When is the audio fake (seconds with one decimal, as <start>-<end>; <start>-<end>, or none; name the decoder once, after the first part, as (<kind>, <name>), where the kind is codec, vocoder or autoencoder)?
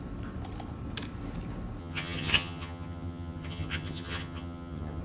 1.8-5.0 (vocoder, HiFi-GAN)